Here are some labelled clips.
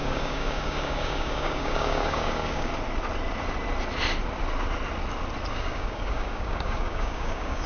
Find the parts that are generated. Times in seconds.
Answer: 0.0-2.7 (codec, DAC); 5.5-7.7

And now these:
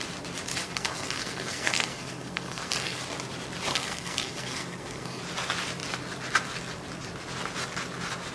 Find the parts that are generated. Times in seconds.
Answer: 0.6-3.0 (codec, SNAC); 3.7-5.2

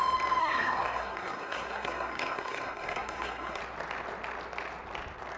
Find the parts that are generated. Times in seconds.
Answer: 0.4-3.6 (codec, SNAC)

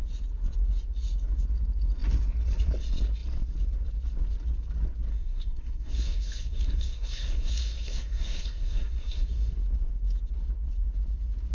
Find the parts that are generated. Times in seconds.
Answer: 5.1-9.5 (codec, SNAC)

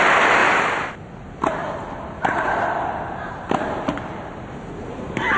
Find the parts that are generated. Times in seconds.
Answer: none

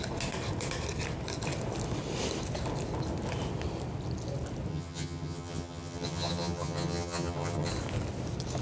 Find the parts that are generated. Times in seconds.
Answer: 4.7-7.7 (vocoder, HiFi-GAN)